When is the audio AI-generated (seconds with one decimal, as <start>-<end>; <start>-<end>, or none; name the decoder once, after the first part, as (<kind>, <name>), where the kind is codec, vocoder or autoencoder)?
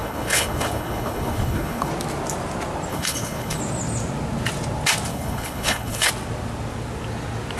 0.0-1.9 (codec, HILCodec); 2.9-3.6; 5.1-6.1